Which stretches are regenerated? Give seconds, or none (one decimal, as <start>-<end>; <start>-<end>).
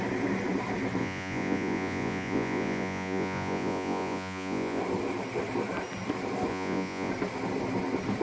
1.0-4.8; 6.5-7.1